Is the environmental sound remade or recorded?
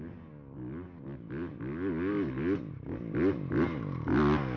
recorded